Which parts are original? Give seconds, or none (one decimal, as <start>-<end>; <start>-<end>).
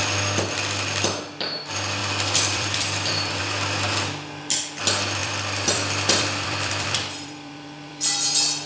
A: 0.0-2.0; 3.4-5.2; 8.0-8.7